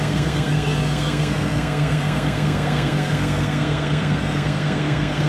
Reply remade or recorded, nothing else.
remade